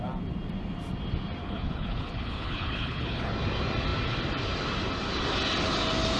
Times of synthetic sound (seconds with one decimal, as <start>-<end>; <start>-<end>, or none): 1.4-3.3